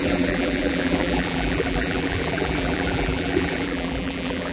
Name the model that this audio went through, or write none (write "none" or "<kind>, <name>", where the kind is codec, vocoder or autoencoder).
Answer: vocoder, BigVGAN v2